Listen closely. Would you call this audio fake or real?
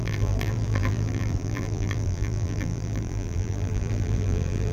fake